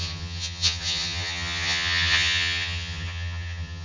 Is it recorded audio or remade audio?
remade